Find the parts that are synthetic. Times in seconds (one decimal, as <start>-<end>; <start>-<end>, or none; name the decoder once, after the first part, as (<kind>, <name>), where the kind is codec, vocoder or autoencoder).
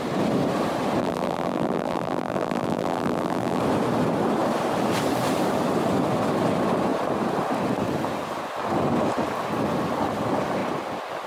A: 1.0-3.6 (vocoder, BigVGAN v2)